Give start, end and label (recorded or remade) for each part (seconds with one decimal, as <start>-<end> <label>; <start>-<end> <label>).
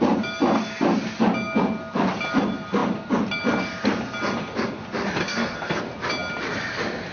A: 0.0-5.2 recorded; 5.2-5.8 remade; 5.8-7.1 recorded